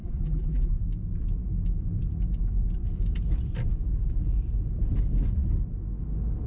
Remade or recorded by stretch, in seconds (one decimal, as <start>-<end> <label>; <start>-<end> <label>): 0.0-0.8 remade; 0.8-6.5 recorded